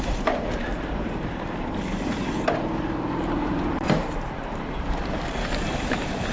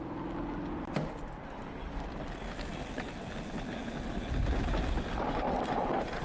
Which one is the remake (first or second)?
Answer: first